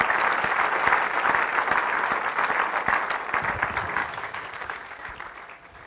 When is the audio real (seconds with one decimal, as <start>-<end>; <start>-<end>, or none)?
0.0-4.0; 5.1-5.9